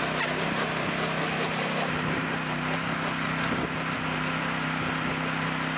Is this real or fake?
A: real